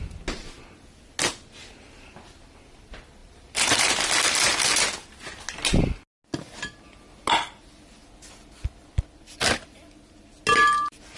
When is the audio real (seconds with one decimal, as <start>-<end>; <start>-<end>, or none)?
0.0-3.2; 3.9-11.2